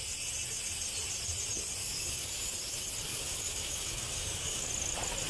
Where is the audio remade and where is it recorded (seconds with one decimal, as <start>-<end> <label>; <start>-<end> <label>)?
0.0-1.8 recorded; 1.8-2.5 remade; 2.5-3.1 recorded; 3.1-4.7 remade; 4.7-5.3 recorded